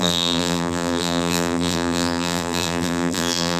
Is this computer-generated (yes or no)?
yes